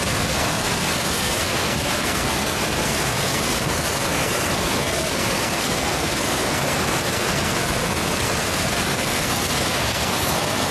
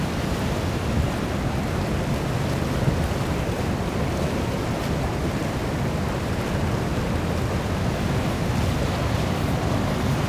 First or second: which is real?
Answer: second